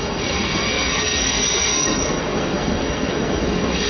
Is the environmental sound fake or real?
fake